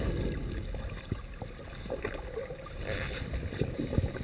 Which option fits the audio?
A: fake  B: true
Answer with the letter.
B